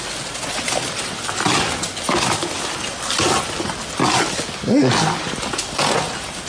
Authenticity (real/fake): real